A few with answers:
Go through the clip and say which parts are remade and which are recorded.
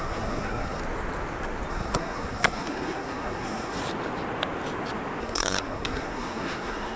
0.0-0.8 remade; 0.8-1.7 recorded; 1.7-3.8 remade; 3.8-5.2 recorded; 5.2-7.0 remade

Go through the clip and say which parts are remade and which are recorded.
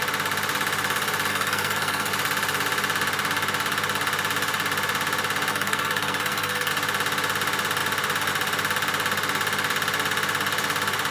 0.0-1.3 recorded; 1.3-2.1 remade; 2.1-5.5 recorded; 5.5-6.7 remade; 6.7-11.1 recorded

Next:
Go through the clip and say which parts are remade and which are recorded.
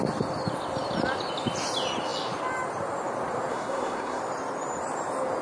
0.0-3.5 recorded; 3.5-4.2 remade; 4.2-5.4 recorded